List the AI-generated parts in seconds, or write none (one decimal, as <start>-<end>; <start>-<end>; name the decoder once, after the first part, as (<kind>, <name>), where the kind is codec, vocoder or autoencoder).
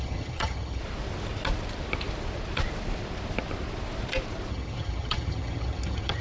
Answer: 0.0-0.8 (vocoder, HiFi-GAN); 4.5-6.2